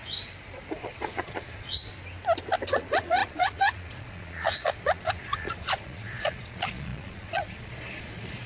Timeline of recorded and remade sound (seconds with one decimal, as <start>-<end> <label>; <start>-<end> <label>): 0.0-0.8 recorded; 0.8-1.9 remade; 1.9-2.7 recorded; 2.7-8.5 remade